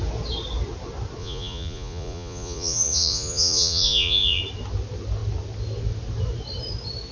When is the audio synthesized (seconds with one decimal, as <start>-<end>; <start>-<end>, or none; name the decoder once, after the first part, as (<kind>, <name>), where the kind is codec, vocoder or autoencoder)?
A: 1.2-4.4 (vocoder, Vocos)